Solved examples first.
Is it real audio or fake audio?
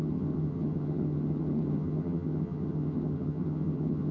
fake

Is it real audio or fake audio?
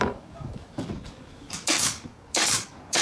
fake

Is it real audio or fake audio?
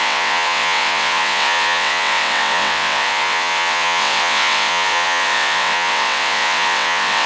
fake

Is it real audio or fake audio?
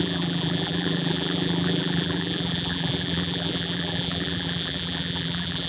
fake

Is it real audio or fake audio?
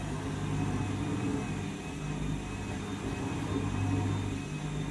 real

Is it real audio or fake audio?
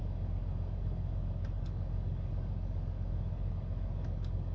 fake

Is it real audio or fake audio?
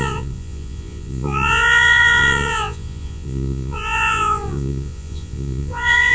fake